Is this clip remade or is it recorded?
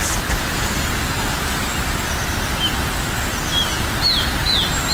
recorded